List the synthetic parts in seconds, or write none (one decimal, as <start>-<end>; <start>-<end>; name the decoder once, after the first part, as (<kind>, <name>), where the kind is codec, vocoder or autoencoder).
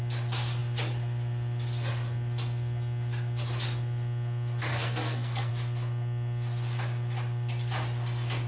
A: 4.7-5.5 (codec, SNAC)